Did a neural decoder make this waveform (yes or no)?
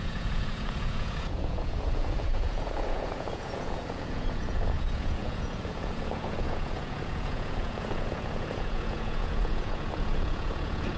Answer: yes